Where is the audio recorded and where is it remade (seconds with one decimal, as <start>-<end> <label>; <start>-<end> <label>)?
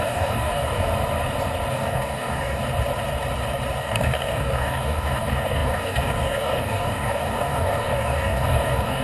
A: 0.0-0.9 remade; 0.9-1.7 recorded; 1.7-2.6 remade; 2.6-3.8 recorded; 3.8-9.0 remade